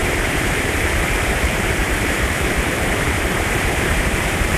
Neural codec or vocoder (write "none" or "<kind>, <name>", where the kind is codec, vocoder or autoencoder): vocoder, BigVGAN v2